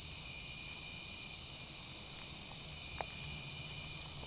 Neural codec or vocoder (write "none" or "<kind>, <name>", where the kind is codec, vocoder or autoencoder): none